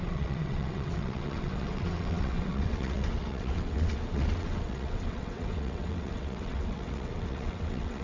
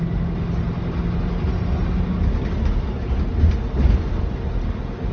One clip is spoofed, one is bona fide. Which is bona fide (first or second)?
second